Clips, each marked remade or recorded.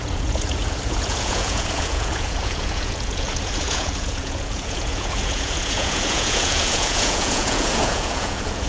remade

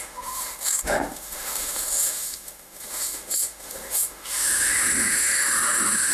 remade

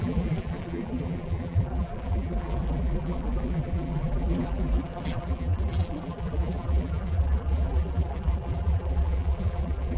remade